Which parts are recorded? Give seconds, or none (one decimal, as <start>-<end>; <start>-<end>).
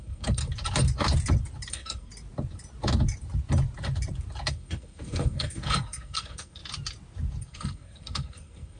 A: 0.4-1.7; 2.1-4.5; 6.6-7.4